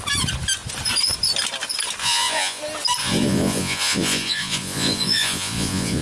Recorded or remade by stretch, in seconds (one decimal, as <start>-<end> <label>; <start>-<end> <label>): 0.0-2.0 recorded; 2.0-2.6 remade; 2.6-3.0 recorded; 3.0-6.0 remade